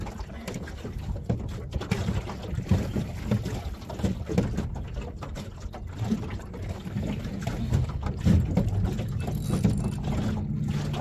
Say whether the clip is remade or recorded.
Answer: recorded